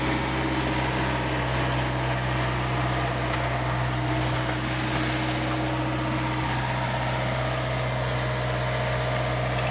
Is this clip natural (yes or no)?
yes